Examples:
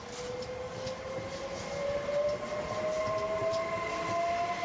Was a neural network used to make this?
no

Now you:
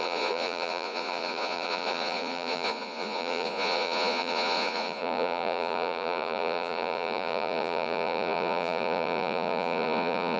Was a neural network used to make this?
yes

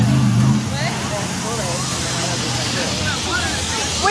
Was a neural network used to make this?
no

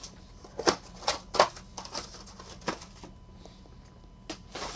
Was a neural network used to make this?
no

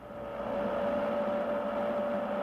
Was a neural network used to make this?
no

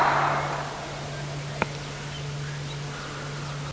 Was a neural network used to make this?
no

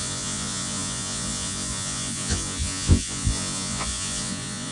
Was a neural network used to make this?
yes